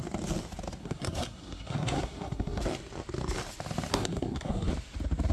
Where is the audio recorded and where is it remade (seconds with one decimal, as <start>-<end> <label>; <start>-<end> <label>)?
0.0-0.8 recorded; 0.8-2.6 remade; 2.6-3.9 recorded; 3.9-4.7 remade; 4.7-5.3 recorded